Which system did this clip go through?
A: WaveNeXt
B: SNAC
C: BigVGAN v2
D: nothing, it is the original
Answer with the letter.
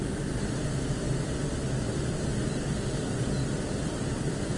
D